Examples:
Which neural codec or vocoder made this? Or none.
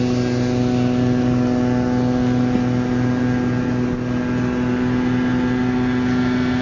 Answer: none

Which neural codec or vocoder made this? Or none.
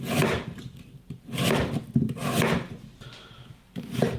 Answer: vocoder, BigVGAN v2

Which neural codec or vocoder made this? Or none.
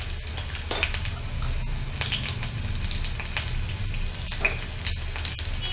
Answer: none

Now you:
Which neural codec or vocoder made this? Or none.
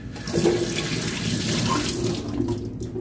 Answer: none